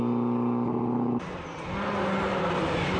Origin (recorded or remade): recorded